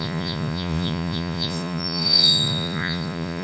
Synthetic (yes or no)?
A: yes